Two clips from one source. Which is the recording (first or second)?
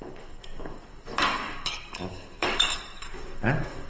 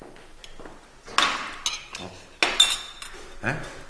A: second